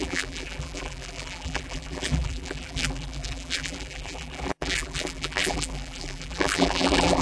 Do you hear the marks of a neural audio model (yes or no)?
yes